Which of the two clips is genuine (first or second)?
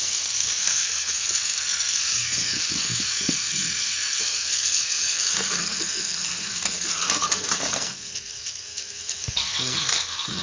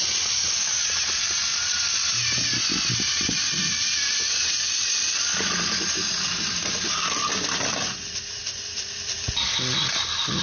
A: second